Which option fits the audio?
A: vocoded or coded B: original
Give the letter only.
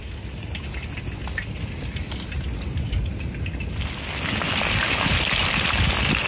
B